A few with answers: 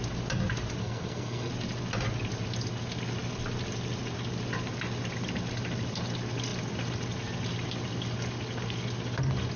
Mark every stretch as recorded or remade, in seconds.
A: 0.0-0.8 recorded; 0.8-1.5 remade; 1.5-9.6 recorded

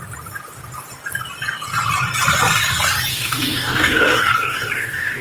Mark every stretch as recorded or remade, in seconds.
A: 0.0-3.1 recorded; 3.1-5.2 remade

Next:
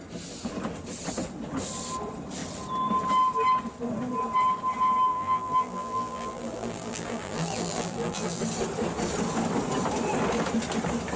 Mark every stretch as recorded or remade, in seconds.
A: 0.0-5.1 recorded; 5.1-8.4 remade; 8.4-11.2 recorded

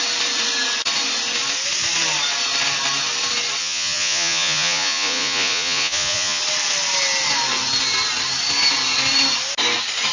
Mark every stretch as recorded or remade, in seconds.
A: 0.0-3.6 recorded; 3.6-6.4 remade; 6.4-10.1 recorded